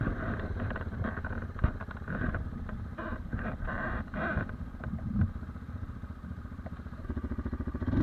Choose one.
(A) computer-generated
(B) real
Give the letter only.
A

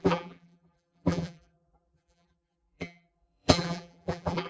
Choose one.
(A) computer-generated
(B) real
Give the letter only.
A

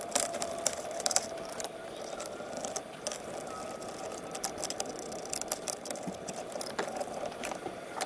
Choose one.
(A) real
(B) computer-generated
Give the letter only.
B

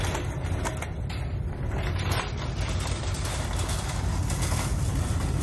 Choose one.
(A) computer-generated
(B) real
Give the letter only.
A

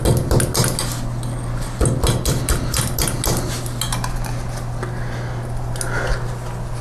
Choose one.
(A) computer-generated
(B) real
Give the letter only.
B